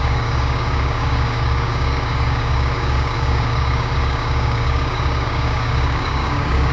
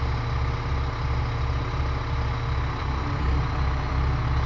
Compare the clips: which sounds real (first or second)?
second